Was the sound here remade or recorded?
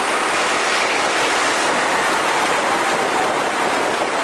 recorded